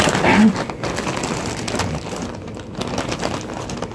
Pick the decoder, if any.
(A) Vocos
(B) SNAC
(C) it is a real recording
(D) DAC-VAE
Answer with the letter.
C